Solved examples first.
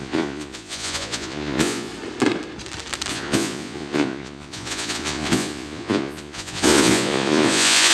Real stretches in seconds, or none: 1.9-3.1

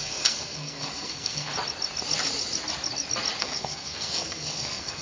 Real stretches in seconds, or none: 1.5-3.4

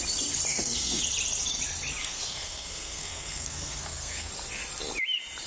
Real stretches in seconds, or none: 0.0-0.5; 1.0-2.0; 4.3-5.5

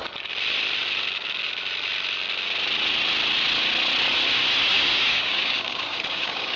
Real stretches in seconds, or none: 0.0-4.7